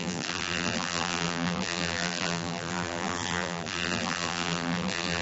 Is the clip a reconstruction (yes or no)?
yes